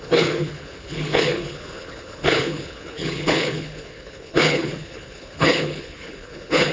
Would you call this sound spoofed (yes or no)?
yes